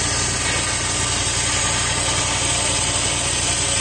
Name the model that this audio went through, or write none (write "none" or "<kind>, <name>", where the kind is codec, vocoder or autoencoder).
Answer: none